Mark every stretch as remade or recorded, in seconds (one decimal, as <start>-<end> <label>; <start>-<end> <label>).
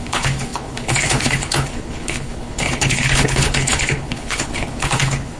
0.0-5.4 remade